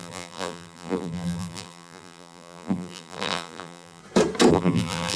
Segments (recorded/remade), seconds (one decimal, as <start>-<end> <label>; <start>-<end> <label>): 0.0-4.0 remade; 4.0-4.5 recorded; 4.5-5.2 remade